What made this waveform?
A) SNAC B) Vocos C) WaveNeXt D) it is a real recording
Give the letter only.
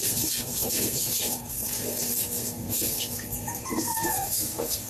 A